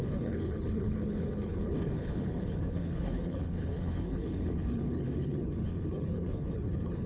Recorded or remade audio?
remade